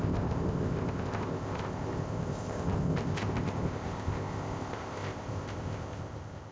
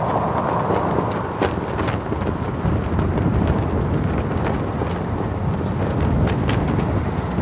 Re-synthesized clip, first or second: first